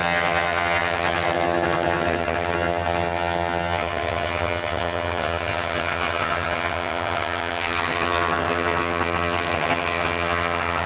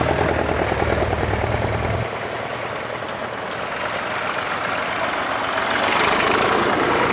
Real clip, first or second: second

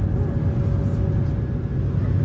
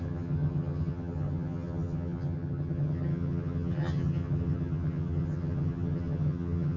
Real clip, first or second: first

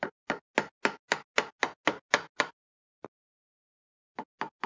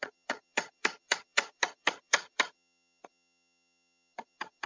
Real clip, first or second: first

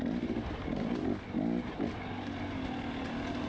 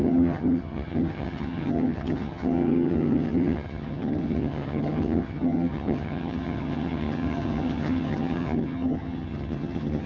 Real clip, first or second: first